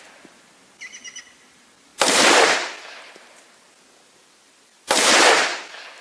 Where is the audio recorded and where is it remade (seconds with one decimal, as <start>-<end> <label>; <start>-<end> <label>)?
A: 0.0-6.0 recorded